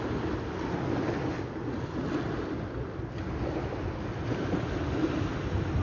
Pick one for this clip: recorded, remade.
recorded